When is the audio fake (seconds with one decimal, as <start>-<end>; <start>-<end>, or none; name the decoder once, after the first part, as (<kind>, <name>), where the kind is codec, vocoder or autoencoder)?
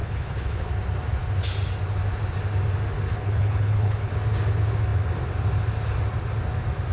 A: 0.0-0.7 (codec, HILCodec); 3.1-4.1